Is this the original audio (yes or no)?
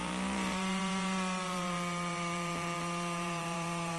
no